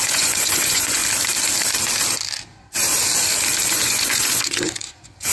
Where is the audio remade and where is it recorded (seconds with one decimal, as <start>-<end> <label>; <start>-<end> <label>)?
0.0-1.0 remade; 1.0-3.7 recorded; 3.7-5.3 remade